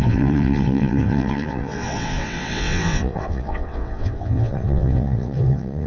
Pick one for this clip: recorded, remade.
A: remade